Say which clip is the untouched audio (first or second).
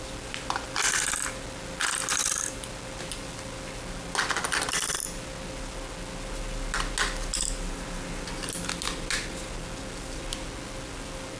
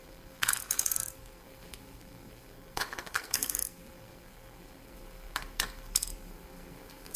first